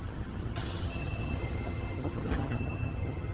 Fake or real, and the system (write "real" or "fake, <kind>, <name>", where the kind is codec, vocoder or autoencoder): fake, vocoder, HiFi-GAN